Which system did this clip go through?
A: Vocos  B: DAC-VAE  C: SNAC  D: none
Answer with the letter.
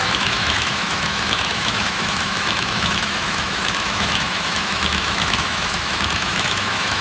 B